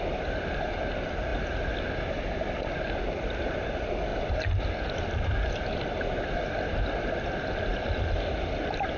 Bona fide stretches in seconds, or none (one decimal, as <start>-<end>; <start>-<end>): 0.0-4.1; 6.0-9.0